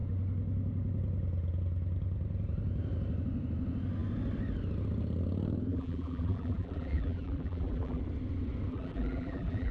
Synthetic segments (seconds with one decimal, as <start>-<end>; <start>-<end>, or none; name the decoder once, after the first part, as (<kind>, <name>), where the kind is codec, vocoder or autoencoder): 5.7-8.0 (vocoder, BigVGAN v2); 8.7-9.7